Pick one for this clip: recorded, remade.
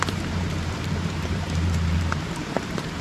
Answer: remade